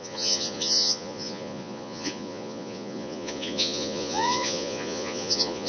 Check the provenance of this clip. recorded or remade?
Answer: remade